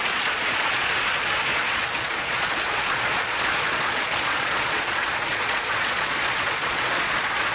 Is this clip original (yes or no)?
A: no